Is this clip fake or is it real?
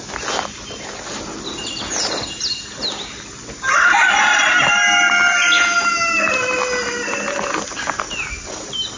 real